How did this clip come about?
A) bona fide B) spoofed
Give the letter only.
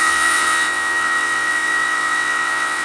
B